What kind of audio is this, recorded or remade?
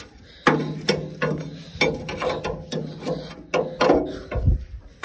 recorded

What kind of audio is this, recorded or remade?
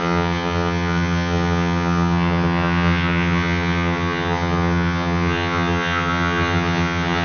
remade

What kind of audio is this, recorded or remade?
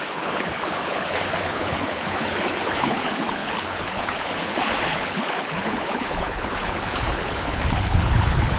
remade